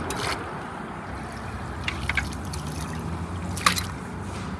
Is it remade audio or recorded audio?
recorded